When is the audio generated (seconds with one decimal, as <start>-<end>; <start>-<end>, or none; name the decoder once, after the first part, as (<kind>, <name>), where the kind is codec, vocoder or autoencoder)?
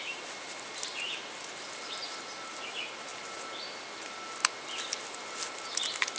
none